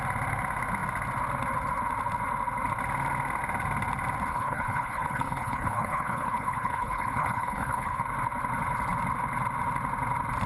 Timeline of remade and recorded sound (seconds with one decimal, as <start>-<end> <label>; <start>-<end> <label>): 0.0-4.3 recorded; 4.3-8.0 remade; 8.0-10.5 recorded